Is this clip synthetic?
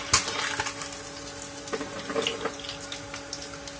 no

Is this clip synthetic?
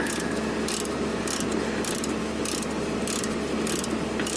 no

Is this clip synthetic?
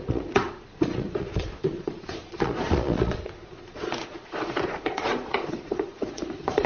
yes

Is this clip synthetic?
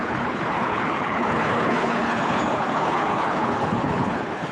yes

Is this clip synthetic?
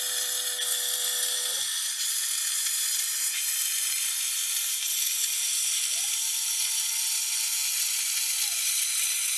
no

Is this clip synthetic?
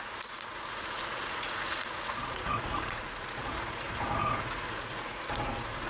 yes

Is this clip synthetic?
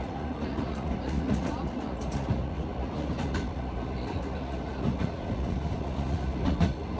yes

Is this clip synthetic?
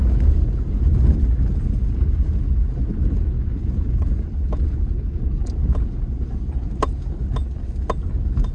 no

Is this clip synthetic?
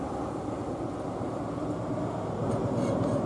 no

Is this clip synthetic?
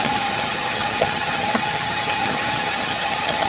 yes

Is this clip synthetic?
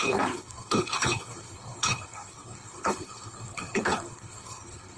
yes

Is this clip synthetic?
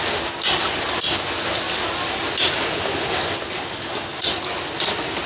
no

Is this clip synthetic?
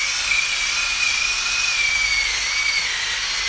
no